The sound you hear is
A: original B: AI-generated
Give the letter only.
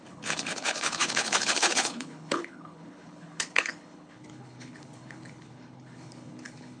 B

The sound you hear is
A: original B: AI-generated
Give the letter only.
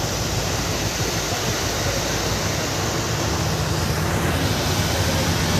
A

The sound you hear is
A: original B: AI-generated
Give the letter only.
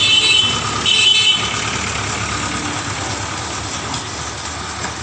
A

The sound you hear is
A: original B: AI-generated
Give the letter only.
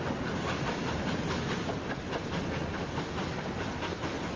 A